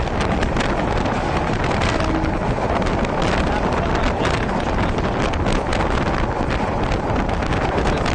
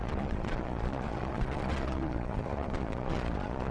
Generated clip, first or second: second